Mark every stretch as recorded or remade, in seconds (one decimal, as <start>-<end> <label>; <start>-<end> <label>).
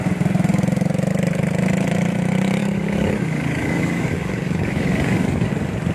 0.0-2.6 recorded; 2.6-5.5 remade; 5.5-5.9 recorded